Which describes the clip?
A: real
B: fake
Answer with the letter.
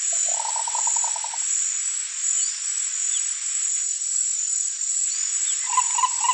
A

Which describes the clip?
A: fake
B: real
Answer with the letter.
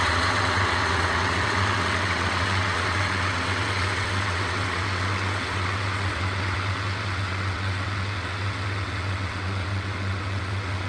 A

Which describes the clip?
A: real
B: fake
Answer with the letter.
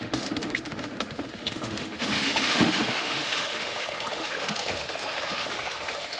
B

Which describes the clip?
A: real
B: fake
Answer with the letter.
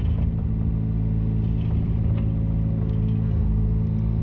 A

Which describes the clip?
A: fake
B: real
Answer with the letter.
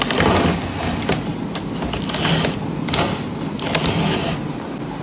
B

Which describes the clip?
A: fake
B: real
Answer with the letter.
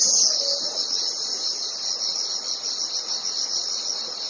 B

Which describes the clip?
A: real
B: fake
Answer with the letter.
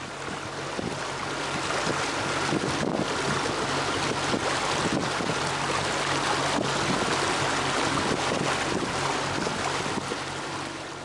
A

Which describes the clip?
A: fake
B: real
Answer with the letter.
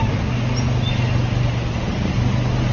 B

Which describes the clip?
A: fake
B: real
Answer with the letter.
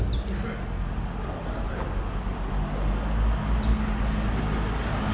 B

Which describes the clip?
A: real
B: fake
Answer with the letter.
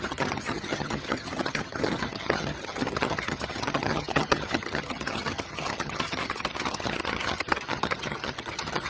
B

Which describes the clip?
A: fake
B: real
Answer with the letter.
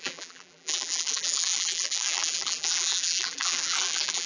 A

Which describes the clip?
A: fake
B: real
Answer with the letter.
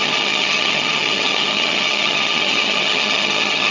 A